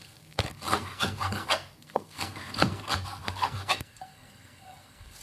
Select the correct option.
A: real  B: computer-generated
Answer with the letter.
B